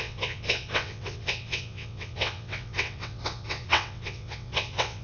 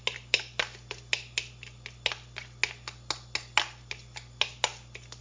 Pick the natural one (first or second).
second